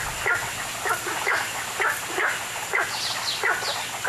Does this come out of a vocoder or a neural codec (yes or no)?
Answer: no